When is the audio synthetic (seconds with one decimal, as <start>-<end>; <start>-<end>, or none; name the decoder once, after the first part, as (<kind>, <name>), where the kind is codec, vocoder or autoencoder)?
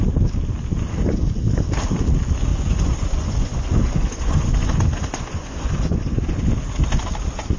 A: 2.5-6.5 (vocoder, Vocos)